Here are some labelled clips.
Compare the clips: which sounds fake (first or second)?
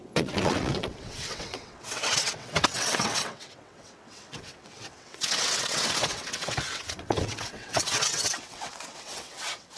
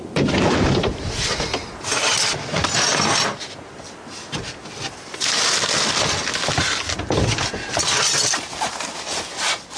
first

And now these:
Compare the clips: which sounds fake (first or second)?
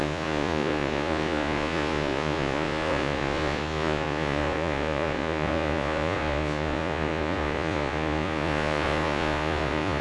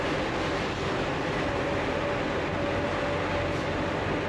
first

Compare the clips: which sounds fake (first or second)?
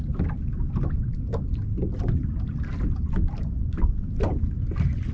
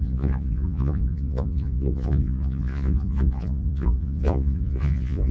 second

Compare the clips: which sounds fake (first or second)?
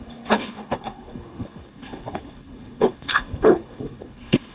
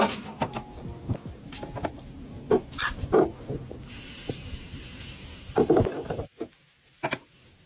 first